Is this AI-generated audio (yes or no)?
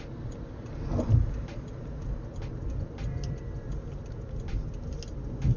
no